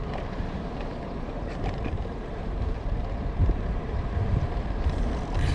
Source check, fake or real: fake